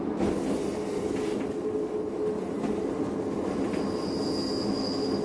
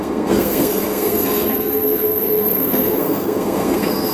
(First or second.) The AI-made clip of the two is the second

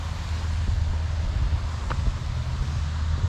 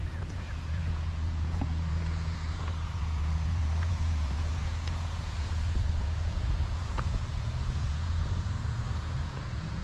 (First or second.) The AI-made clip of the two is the second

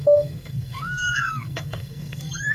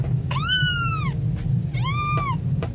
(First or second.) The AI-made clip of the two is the first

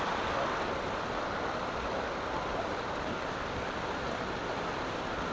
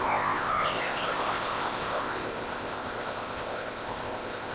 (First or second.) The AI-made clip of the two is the second